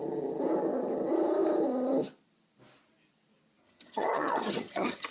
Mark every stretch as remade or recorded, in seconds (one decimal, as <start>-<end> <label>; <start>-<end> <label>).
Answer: 0.0-3.6 recorded; 3.6-5.1 remade